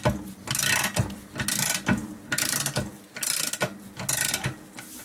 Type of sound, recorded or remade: recorded